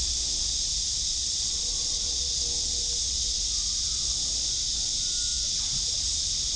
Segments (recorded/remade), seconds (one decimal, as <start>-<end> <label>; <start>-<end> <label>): 0.0-1.2 recorded; 1.2-2.3 remade; 2.3-6.6 recorded